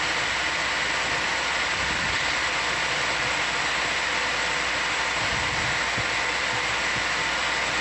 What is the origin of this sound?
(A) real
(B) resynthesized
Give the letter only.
A